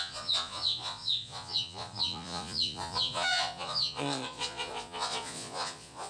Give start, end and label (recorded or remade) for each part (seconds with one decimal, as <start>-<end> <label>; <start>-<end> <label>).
0.0-6.1 remade